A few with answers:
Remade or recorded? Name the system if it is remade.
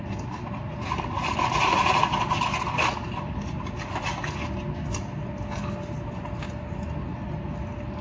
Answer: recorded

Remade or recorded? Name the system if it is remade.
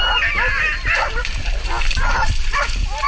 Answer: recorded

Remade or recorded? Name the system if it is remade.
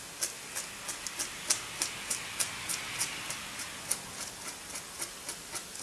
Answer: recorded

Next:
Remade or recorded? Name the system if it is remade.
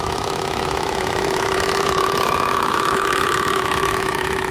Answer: remade, autoencoder, DAC-VAE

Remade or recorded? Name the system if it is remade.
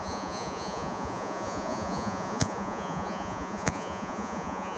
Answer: remade, vocoder, Vocos